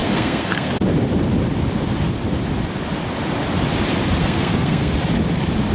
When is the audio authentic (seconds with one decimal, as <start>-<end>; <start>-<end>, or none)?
0.7-4.2; 4.9-5.7